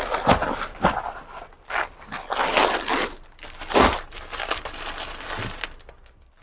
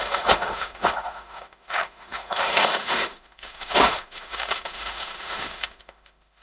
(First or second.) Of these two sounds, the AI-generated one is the second